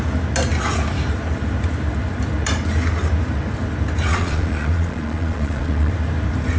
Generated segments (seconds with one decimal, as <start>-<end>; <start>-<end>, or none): 4.1-5.9